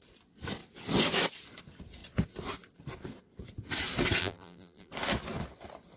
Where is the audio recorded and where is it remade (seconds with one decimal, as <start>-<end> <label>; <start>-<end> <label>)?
0.0-4.2 recorded; 4.2-4.9 remade; 4.9-6.0 recorded